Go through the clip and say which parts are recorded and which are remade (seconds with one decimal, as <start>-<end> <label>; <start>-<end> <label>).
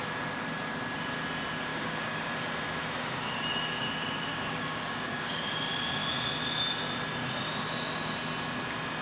0.0-1.7 recorded; 1.7-2.3 remade; 2.3-4.3 recorded; 4.3-5.5 remade; 5.5-9.0 recorded